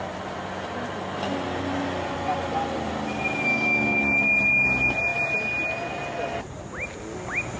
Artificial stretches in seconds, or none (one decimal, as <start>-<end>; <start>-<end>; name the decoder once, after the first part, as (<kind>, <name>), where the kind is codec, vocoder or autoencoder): 3.5-4.0 (codec, DAC)